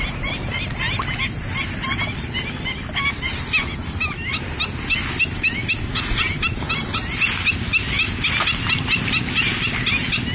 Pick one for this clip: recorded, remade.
recorded